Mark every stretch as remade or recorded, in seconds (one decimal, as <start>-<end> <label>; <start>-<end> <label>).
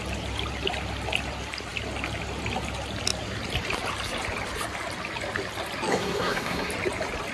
0.0-5.9 recorded; 5.9-6.7 remade; 6.7-7.3 recorded